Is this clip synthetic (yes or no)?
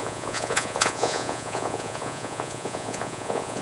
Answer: yes